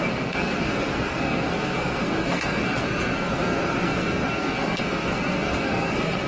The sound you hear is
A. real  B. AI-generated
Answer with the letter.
B